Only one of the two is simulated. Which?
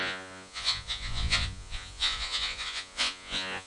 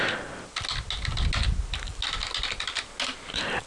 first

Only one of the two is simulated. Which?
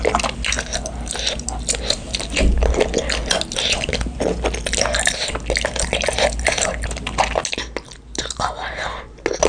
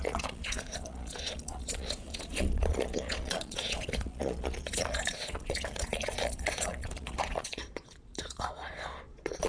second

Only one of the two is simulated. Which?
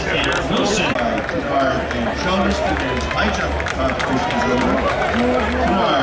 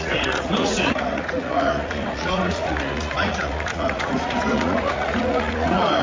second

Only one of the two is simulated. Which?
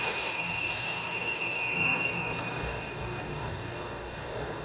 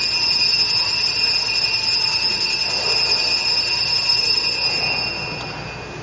first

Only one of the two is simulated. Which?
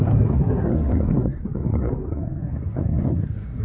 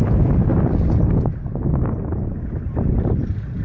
first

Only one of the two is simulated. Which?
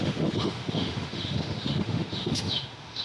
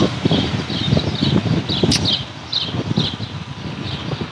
first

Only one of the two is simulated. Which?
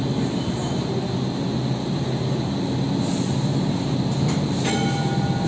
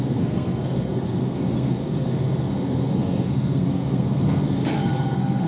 second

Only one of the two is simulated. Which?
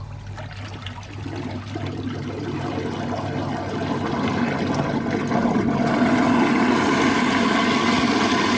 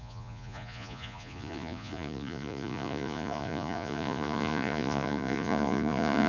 second